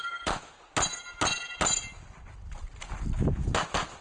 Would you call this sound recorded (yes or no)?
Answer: yes